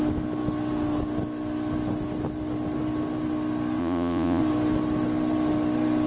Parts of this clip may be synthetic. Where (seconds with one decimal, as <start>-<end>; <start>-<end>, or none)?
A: 3.8-4.4